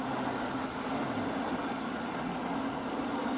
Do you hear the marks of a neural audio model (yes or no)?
no